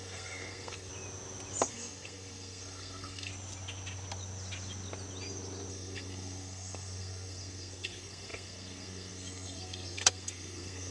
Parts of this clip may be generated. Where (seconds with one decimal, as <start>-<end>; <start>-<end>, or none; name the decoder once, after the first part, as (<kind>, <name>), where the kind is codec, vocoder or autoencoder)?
0.0-0.9 (codec, SNAC); 1.7-3.3; 5.7-10.9